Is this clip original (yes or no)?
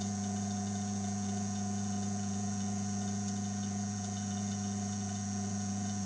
no